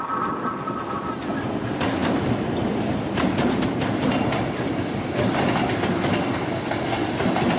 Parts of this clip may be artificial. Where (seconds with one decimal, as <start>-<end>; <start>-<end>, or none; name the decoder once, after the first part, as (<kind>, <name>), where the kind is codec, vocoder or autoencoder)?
none